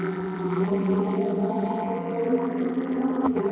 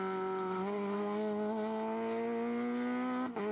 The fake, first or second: first